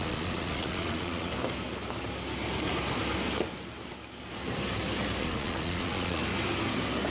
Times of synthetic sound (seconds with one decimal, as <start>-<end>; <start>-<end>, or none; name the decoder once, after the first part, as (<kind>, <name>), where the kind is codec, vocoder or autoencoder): 0.0-1.3 (vocoder, Vocos); 5.2-6.2

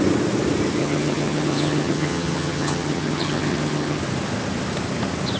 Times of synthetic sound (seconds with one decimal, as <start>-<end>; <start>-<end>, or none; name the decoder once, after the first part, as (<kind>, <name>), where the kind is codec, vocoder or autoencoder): 0.8-4.0 (vocoder, HiFi-GAN)

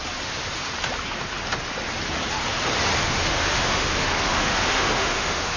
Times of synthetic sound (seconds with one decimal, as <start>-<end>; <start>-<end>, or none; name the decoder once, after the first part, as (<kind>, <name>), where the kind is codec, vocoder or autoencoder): 3.0-5.6 (autoencoder, DAC-VAE)